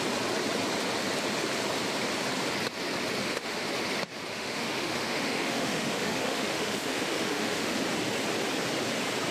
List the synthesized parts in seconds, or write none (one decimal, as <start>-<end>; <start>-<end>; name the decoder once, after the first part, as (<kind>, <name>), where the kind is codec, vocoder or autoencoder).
3.2-3.7 (autoencoder, DAC-VAE); 4.3-7.8